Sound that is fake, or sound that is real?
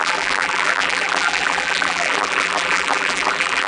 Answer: fake